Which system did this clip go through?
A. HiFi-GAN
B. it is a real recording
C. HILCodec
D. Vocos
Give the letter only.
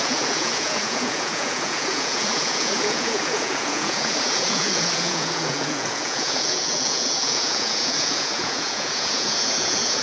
D